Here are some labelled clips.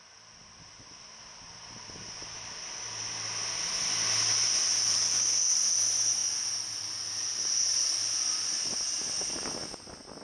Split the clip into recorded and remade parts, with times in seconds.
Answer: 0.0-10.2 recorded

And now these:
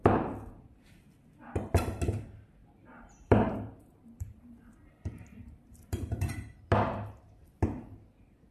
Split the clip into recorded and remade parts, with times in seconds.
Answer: 0.0-2.6 recorded; 2.6-6.6 remade; 6.6-8.5 recorded

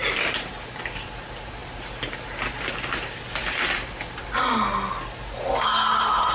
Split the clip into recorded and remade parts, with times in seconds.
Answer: 0.0-6.3 recorded

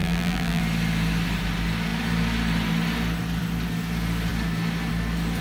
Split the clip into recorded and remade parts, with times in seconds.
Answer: 0.0-0.6 remade; 0.6-5.4 recorded

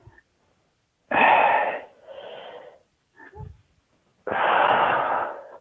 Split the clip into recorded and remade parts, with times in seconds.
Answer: 0.0-5.6 recorded

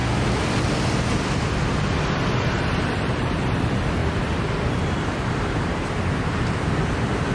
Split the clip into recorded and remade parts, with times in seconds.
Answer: 0.0-4.0 recorded; 4.0-6.7 remade; 6.7-7.3 recorded

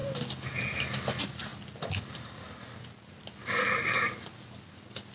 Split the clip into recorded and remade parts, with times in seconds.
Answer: 0.0-5.1 recorded

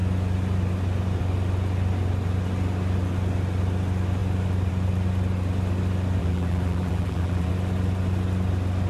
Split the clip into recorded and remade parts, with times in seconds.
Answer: 0.0-6.2 recorded; 6.2-7.5 remade; 7.5-8.9 recorded